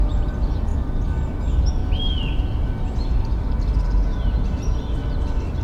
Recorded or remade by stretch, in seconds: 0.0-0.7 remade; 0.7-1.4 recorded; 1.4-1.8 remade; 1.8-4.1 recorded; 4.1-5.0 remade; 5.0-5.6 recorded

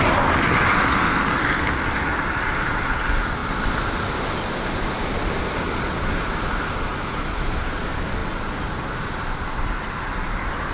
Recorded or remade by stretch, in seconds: 0.0-10.7 recorded